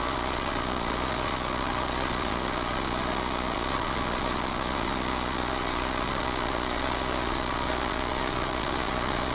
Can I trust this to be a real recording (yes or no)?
no